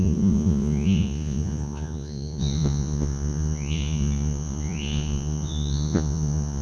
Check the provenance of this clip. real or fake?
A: fake